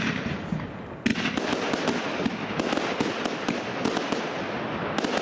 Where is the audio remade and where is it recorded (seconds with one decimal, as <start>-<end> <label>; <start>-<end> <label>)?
0.0-5.2 recorded